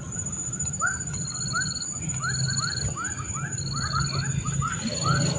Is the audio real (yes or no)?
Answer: yes